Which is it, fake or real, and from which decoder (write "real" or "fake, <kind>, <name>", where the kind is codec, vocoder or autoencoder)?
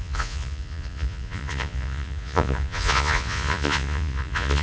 fake, vocoder, Vocos